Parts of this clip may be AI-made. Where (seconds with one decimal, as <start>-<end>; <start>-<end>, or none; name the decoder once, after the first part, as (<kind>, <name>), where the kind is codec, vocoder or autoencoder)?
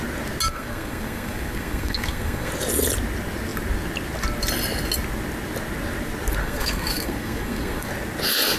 0.5-2.5 (codec, SNAC); 6.4-7.9